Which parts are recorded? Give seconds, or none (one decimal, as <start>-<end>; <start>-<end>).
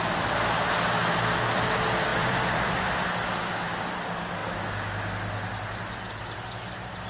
0.0-2.1; 3.5-7.1